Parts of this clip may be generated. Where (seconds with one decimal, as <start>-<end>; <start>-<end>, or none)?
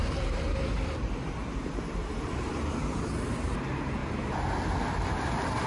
0.0-3.4